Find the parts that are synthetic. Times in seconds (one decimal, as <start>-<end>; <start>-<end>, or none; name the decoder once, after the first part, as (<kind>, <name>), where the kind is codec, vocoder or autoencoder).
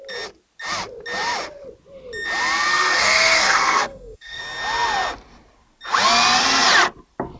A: 2.7-4.4 (codec, SNAC)